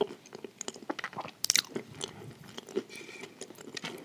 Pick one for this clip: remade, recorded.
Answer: recorded